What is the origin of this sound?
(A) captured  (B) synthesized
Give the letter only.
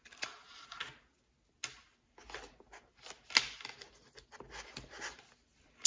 A